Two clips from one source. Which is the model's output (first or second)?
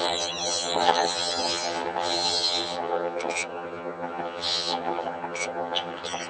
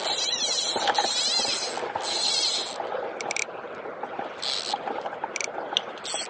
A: first